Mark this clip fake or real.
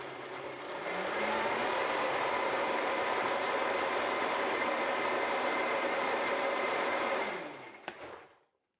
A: fake